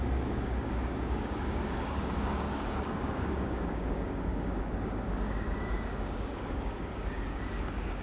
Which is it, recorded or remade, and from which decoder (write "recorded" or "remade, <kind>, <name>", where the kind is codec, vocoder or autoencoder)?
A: remade, codec, DAC